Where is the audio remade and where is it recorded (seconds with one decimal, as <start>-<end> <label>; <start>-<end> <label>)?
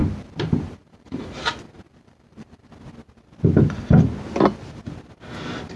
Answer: 0.0-2.7 remade; 2.7-5.8 recorded